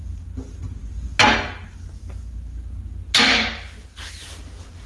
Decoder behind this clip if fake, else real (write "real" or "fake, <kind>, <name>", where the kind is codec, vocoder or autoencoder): real